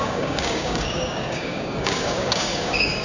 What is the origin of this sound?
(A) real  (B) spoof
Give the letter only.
B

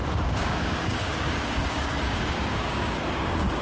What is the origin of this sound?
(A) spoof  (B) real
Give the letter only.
A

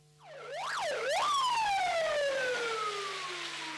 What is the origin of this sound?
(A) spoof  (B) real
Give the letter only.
B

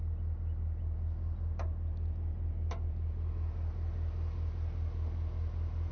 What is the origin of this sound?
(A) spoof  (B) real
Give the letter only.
B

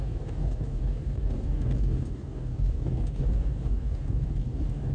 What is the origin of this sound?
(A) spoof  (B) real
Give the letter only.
A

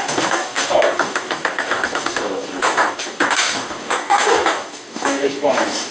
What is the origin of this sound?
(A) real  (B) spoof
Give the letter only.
B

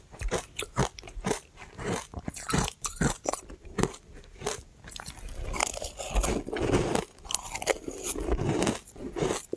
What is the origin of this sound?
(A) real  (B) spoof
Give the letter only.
A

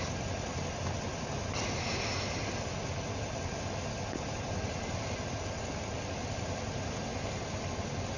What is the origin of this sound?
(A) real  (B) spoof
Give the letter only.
A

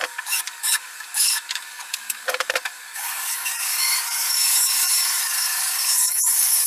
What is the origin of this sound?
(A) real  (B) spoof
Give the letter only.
B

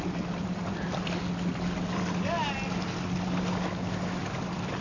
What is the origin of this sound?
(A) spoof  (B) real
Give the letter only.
B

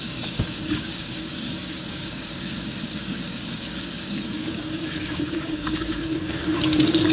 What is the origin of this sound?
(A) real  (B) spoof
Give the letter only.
B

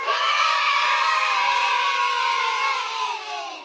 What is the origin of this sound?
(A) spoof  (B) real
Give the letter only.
A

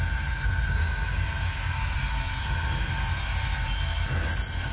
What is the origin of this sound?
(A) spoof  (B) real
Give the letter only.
B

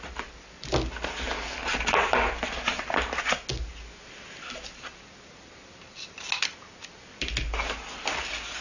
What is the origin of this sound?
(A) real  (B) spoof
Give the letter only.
A